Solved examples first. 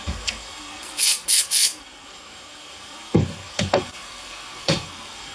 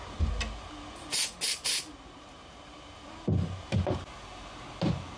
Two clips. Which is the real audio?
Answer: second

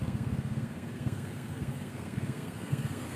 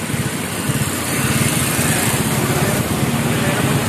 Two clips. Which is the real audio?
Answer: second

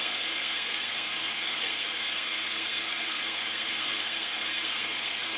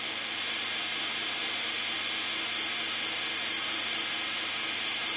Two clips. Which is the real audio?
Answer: second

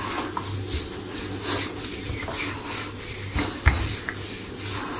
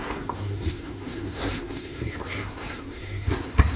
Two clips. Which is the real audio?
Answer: first